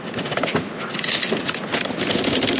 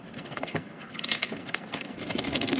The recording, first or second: first